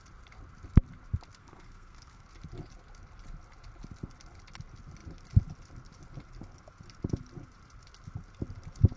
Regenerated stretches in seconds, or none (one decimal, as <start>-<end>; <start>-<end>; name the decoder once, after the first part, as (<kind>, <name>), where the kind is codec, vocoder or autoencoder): 1.4-2.2 (codec, SNAC)